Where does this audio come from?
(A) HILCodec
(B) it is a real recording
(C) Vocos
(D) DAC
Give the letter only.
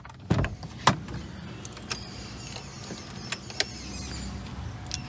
B